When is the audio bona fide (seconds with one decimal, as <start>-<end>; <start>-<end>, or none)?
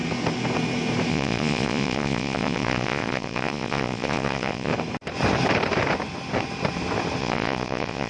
0.0-1.1; 4.7-7.2